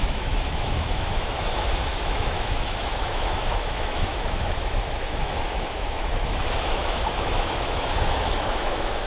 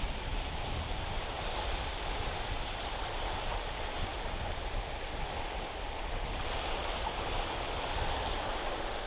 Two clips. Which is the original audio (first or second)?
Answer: second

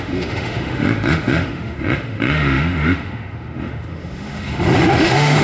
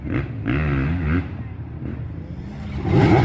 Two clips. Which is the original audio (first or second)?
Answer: second